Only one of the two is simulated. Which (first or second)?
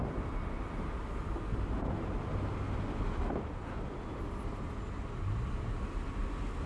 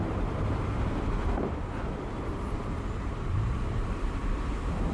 second